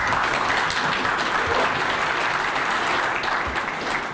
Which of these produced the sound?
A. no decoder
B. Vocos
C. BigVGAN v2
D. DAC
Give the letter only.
A